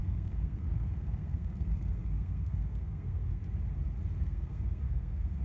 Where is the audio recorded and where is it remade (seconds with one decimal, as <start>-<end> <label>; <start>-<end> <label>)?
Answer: 0.0-3.4 remade; 3.4-4.2 recorded; 4.2-5.4 remade